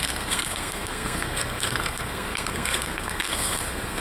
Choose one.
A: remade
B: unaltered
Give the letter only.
A